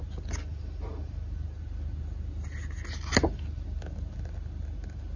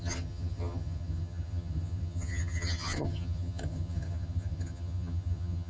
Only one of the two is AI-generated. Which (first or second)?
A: second